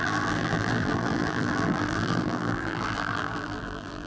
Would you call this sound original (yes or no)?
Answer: no